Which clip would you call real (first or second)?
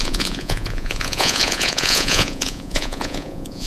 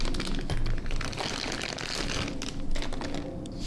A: second